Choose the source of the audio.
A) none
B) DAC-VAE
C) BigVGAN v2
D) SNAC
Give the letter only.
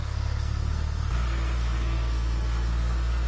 D